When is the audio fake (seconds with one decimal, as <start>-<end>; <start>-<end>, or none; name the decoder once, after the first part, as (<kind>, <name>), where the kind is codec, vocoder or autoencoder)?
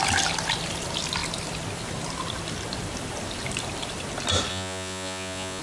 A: 4.5-5.6 (vocoder, Vocos)